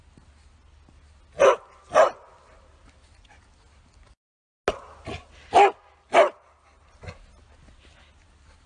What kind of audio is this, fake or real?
real